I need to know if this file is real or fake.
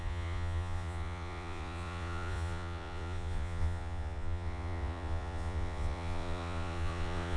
fake